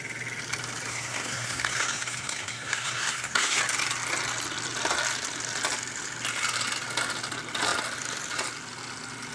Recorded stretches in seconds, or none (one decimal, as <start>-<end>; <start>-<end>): 0.0-0.9; 3.6-9.3